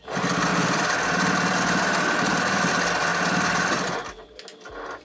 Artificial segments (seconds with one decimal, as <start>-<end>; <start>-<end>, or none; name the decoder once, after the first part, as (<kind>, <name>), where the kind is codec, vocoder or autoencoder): 0.5-2.7 (vocoder, BigVGAN v2); 3.1-3.9